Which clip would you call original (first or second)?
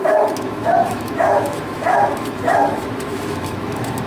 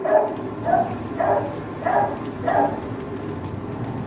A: second